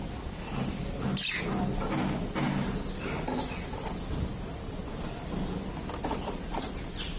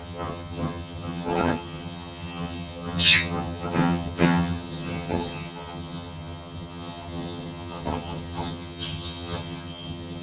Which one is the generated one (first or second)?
second